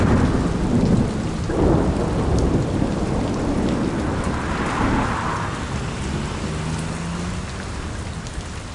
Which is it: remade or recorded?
recorded